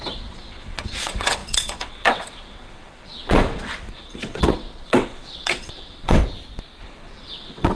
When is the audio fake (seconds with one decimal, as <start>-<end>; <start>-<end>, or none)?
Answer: 0.0-6.2; 6.8-7.8